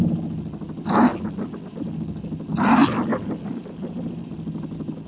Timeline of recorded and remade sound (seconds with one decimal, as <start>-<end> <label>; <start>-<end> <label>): 0.0-3.1 recorded; 3.1-4.2 remade; 4.2-5.1 recorded